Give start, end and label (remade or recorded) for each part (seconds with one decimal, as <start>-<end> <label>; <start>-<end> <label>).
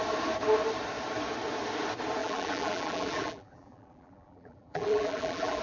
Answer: 0.0-2.2 recorded; 2.2-5.6 remade